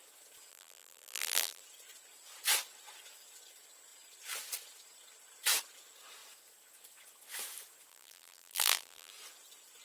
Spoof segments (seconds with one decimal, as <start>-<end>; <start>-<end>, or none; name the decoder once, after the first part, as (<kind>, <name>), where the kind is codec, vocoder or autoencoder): 0.5-1.6 (vocoder, BigVGAN v2); 7.9-9.1